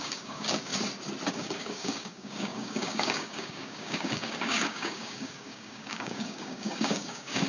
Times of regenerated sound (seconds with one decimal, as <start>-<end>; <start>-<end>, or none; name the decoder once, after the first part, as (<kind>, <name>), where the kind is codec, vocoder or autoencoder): 0.0-0.7 (codec, DAC); 1.3-7.5